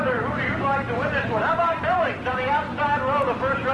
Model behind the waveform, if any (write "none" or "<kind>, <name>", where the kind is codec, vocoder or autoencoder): vocoder, BigVGAN v2